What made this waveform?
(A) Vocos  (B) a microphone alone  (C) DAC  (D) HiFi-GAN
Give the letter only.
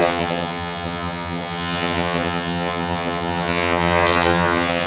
D